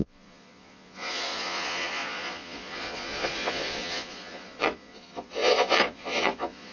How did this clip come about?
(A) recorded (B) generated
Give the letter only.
B